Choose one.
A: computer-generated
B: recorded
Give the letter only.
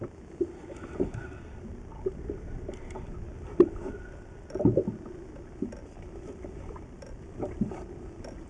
B